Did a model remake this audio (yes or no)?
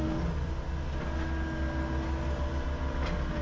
no